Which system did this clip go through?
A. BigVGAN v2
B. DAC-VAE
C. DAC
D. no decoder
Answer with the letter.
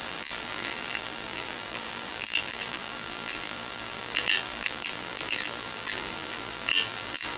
A